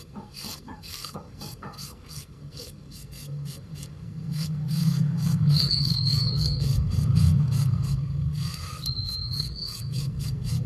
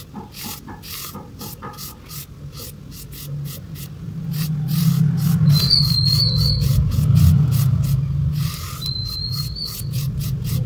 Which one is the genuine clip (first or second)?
second